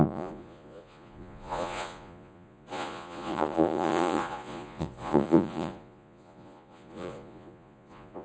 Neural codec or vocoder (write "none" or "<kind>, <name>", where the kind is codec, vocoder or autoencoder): vocoder, Vocos